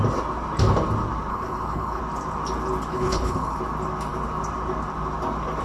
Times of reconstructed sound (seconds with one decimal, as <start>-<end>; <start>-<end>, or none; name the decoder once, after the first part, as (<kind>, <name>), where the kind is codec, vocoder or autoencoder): 1.3-2.0 (codec, HILCodec); 2.9-3.6

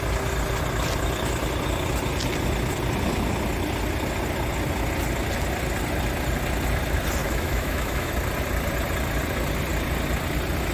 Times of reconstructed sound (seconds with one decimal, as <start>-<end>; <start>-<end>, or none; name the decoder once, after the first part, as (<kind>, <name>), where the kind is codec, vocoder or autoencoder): 7.2-8.1 (autoencoder, DAC-VAE)

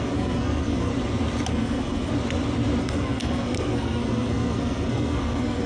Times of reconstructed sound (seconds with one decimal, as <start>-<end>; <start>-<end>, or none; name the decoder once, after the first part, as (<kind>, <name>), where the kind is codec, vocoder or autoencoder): 0.0-0.9 (codec, SNAC); 1.5-2.1; 2.8-5.7

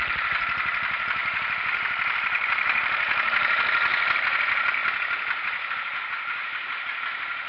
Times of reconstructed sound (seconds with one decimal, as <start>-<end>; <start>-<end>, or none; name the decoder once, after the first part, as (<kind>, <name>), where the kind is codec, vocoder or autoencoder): 1.2-3.6 (vocoder, BigVGAN v2)

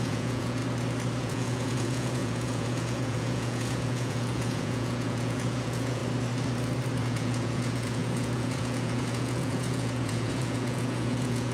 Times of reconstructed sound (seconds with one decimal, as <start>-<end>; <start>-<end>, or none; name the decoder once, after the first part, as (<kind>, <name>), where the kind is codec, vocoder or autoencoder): 0.0-0.6 (vocoder, Vocos); 1.2-6.0; 7.0-11.5

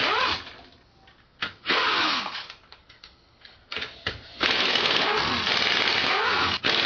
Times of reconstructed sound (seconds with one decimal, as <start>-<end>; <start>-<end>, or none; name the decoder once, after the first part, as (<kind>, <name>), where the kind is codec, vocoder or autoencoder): 1.2-5.3 (codec, SNAC); 6.0-6.5

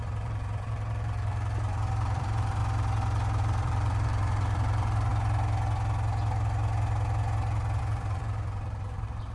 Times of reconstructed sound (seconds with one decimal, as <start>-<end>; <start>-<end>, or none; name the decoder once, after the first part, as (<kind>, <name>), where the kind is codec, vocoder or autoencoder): 0.0-2.6 (vocoder, BigVGAN v2); 3.4-5.1; 7.8-9.3